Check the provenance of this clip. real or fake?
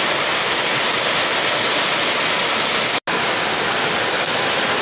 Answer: real